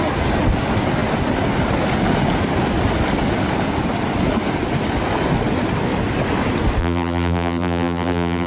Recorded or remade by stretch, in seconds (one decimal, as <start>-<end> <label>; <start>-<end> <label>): 0.0-6.8 recorded; 6.8-8.5 remade